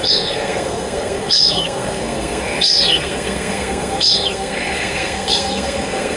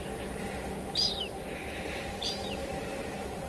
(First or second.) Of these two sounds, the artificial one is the first